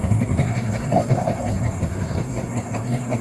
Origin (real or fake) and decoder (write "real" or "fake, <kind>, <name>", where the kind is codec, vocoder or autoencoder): fake, codec, SNAC